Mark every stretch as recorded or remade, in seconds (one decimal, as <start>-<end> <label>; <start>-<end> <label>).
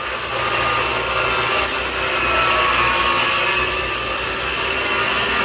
0.0-5.4 recorded